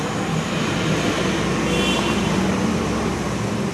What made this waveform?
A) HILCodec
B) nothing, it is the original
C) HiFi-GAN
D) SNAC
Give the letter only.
B